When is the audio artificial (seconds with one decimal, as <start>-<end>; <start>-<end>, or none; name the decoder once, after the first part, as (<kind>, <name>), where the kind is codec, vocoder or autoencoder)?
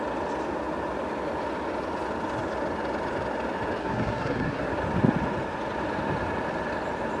3.8-4.7 (codec, SNAC)